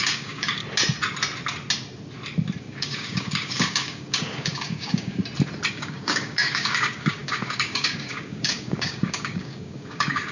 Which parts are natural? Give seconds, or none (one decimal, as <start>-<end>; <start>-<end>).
0.6-2.6; 5.2-5.7